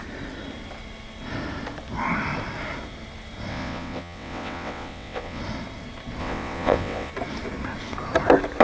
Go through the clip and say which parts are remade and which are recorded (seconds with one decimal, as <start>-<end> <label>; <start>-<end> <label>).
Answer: 0.0-3.5 recorded; 3.5-5.4 remade; 5.4-6.2 recorded; 6.2-7.1 remade; 7.1-8.6 recorded